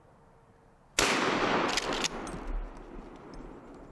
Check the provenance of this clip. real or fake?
real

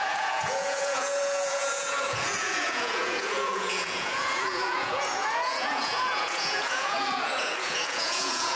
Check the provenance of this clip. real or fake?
fake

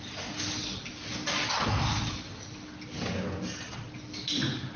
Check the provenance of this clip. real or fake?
real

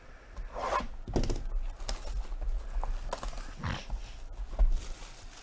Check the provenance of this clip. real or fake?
real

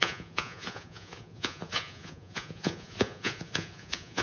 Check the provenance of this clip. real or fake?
fake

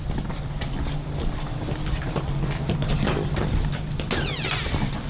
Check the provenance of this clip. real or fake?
real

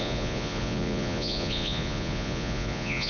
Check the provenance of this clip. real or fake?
fake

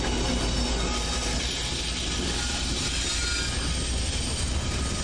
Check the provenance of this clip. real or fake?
real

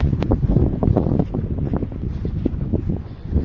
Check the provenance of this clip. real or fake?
fake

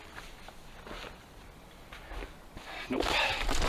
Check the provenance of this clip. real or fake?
real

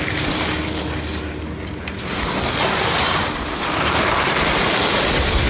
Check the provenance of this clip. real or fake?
real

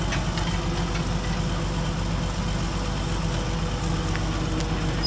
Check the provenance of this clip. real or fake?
real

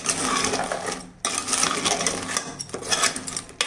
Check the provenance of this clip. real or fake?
real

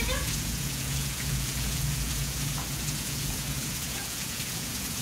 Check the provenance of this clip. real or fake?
fake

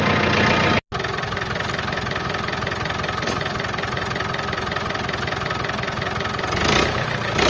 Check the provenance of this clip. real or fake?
real